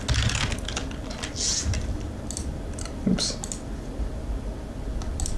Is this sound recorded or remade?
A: recorded